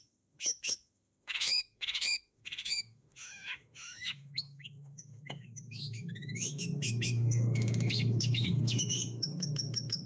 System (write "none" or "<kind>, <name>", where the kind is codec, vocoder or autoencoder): autoencoder, DAC-VAE